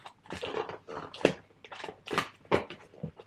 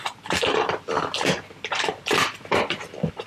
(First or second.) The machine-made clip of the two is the second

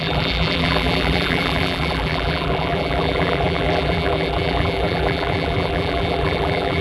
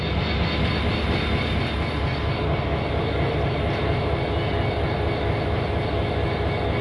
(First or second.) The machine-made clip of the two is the first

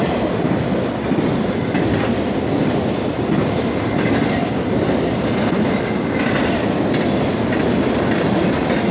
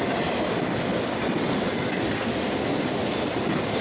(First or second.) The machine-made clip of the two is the first